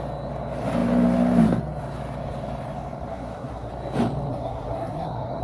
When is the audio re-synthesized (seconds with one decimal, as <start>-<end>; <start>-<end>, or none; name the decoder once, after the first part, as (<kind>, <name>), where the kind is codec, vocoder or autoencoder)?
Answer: 3.1-3.7 (codec, SNAC); 4.3-5.4